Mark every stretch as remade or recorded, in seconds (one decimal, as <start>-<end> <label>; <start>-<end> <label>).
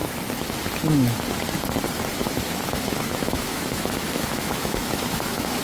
0.0-2.1 recorded; 2.1-5.6 remade